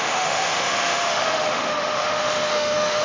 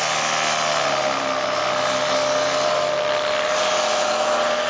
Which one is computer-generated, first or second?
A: first